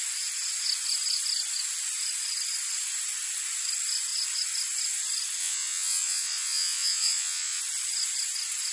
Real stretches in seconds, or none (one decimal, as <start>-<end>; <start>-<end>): 0.0-5.4; 7.6-8.7